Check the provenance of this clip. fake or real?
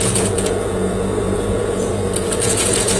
fake